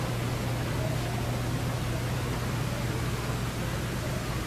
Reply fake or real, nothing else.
real